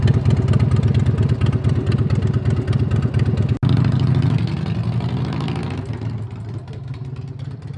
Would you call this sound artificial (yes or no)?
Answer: no